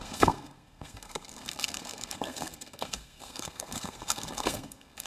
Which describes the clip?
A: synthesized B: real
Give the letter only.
A